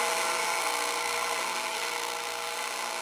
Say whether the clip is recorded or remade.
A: remade